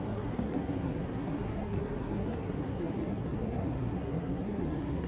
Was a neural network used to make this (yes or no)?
yes